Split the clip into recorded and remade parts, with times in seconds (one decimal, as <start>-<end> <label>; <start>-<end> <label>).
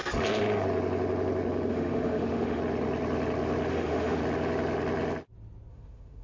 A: 0.0-1.7 recorded; 1.7-2.6 remade; 2.6-3.7 recorded; 3.7-4.2 remade; 4.2-5.7 recorded; 5.7-6.2 remade